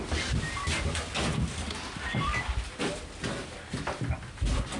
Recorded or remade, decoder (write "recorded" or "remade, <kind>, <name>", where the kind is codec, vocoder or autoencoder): recorded